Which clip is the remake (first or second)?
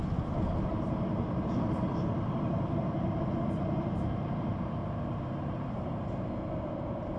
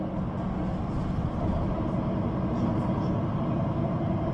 first